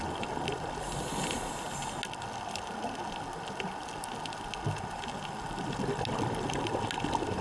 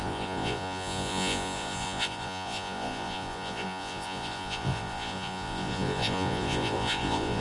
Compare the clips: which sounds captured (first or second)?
first